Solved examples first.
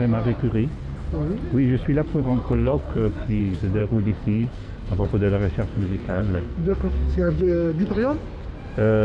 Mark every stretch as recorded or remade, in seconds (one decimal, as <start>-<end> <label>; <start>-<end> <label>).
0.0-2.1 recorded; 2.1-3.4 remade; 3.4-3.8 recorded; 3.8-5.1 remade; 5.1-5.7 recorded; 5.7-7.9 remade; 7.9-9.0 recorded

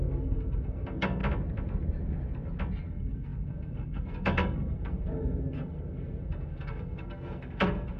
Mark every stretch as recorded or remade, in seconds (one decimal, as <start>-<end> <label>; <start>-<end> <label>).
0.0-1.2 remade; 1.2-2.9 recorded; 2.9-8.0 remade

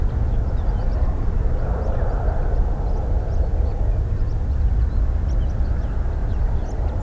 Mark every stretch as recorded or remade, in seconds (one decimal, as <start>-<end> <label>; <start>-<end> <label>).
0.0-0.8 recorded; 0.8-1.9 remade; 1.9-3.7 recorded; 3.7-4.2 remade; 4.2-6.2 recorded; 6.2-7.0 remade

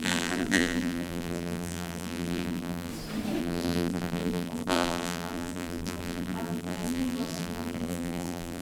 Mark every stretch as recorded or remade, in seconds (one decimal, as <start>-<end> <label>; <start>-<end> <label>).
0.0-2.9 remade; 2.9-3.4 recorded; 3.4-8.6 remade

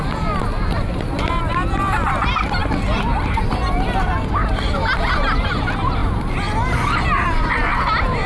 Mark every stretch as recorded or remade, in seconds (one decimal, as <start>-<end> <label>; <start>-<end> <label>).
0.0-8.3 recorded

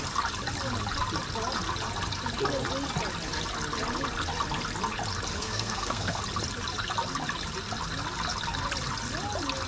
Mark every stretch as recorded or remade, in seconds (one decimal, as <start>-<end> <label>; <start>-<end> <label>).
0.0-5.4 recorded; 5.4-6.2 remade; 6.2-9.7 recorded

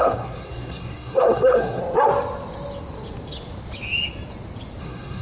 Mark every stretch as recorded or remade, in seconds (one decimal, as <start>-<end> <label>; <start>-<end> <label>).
0.0-1.8 remade; 1.8-4.8 recorded; 4.8-5.2 remade